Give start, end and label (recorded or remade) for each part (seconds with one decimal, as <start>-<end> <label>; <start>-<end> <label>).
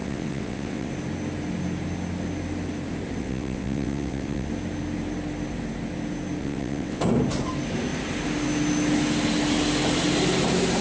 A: 0.0-0.9 remade; 0.9-3.2 recorded; 3.2-4.5 remade; 4.5-6.4 recorded; 6.4-7.0 remade; 7.0-10.8 recorded